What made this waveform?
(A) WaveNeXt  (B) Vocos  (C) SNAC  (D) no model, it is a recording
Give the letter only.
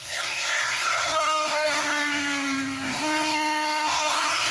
C